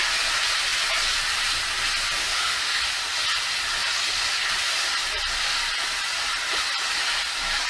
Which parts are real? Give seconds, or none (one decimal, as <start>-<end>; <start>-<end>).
0.0-2.2; 2.8-7.7